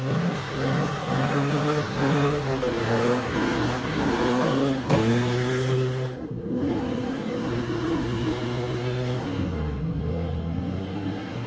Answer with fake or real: fake